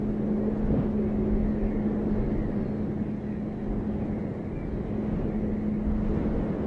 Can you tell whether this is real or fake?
real